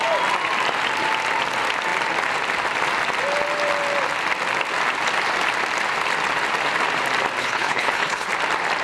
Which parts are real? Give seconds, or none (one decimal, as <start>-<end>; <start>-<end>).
0.0-7.4; 8.3-8.8